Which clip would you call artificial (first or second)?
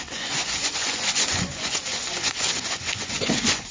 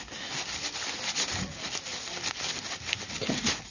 first